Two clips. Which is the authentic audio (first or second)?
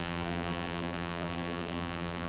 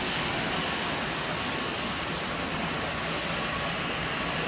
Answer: second